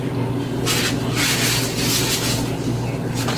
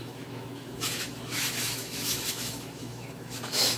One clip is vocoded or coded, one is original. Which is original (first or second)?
first